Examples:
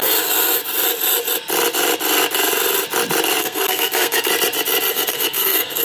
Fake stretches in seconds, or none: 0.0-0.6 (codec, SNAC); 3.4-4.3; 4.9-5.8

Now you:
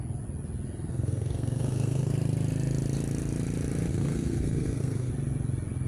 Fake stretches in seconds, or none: 0.9-2.1 (codec, SNAC); 3.9-5.1